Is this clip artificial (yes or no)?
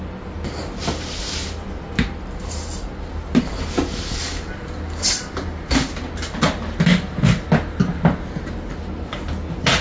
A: no